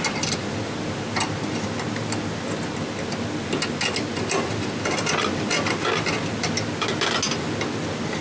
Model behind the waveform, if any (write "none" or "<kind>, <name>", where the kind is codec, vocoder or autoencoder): none